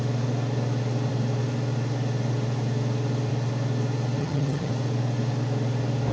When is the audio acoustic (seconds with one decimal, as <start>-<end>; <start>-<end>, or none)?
0.0-4.2; 4.7-6.1